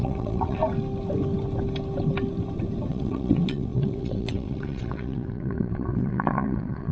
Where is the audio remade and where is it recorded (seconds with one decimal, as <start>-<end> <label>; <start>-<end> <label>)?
0.0-0.6 remade; 0.6-2.9 recorded; 2.9-6.9 remade